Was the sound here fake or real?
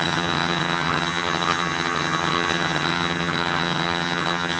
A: fake